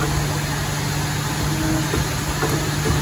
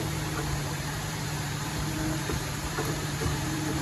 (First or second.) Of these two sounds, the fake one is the second